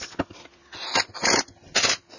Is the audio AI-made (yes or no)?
no